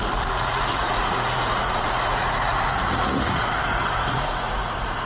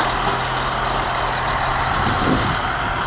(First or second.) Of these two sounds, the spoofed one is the first